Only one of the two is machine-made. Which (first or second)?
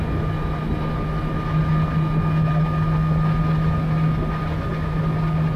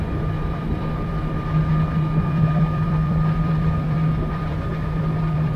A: second